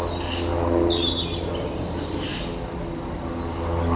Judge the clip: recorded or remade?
recorded